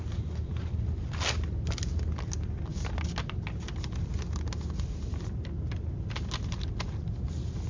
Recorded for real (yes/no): yes